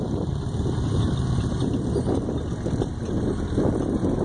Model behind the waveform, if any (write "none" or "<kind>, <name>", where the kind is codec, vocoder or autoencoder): vocoder, BigVGAN v2